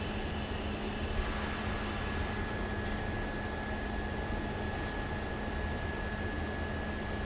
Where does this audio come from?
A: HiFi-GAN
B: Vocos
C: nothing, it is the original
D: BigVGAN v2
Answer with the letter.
C